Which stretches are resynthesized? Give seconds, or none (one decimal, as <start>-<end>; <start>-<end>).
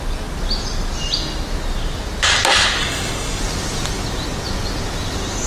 2.8-3.4